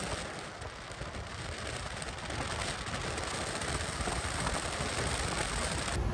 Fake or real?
real